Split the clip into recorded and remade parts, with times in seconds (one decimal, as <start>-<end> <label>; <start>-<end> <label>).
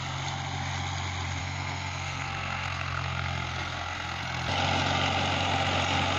0.0-1.4 recorded; 1.4-4.2 remade; 4.2-6.2 recorded